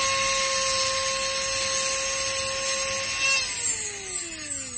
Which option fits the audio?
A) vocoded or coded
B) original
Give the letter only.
B